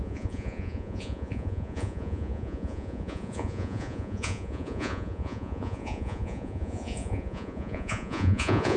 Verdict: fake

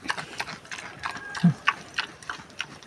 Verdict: real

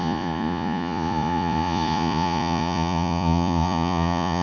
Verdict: fake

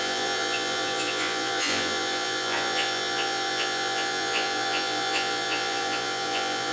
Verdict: fake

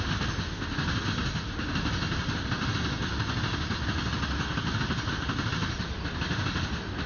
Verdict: real